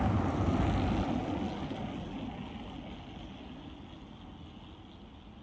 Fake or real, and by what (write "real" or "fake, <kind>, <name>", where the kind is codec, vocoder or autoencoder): real